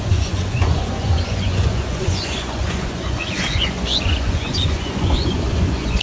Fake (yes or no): yes